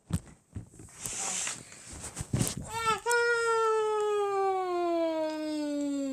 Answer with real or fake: real